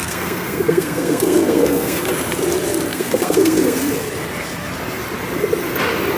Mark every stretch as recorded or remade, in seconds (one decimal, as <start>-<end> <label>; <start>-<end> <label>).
0.0-2.1 remade; 2.1-2.9 recorded; 2.9-4.1 remade; 4.1-6.2 recorded